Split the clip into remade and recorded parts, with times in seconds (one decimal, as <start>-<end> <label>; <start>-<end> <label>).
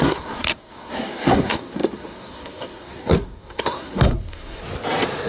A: 0.0-4.6 remade; 4.6-5.3 recorded